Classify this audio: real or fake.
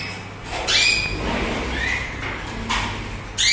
real